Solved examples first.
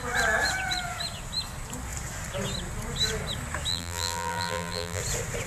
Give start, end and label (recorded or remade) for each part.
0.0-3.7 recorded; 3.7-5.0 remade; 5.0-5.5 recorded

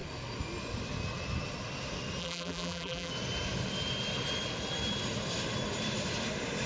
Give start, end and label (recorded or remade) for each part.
0.0-2.2 recorded; 2.2-3.1 remade; 3.1-6.7 recorded

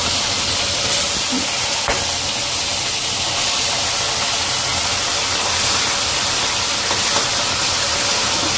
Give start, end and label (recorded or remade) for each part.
0.0-1.3 remade; 1.3-4.7 recorded; 4.7-7.9 remade; 7.9-8.6 recorded

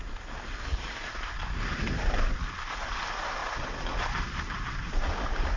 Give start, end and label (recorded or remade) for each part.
0.0-0.7 recorded; 0.7-1.4 remade; 1.4-5.6 recorded

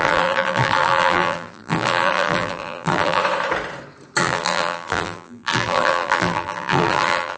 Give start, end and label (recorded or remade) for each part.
0.0-3.2 remade; 3.2-4.2 recorded; 4.2-7.4 remade